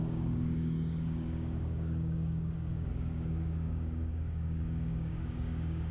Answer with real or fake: fake